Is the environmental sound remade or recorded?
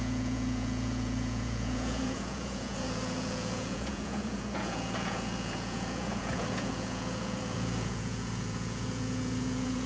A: remade